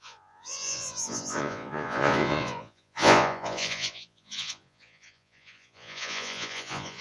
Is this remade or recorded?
remade